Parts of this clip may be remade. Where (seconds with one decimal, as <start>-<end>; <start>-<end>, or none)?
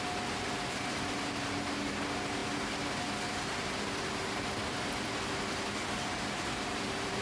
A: none